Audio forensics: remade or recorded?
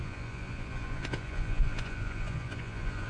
remade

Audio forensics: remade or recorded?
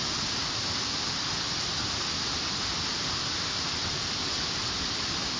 recorded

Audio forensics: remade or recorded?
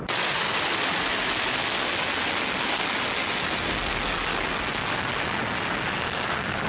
recorded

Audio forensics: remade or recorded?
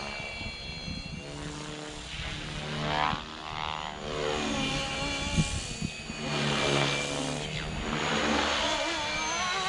recorded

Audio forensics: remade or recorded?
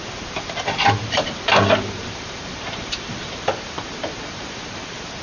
remade